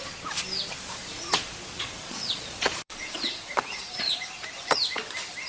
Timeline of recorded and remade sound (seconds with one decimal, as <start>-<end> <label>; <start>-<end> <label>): 0.0-1.0 recorded; 1.0-4.3 remade; 4.3-5.5 recorded